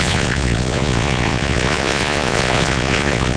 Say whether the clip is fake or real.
fake